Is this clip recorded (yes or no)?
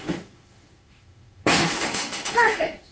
no